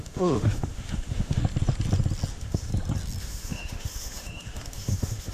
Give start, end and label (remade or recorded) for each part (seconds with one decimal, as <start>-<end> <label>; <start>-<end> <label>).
0.0-1.4 remade; 1.4-2.3 recorded; 2.3-2.7 remade; 2.7-3.2 recorded; 3.2-5.3 remade